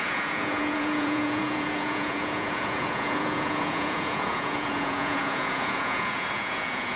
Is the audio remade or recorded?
remade